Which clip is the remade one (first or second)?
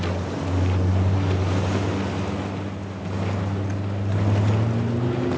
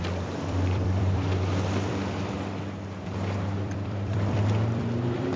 second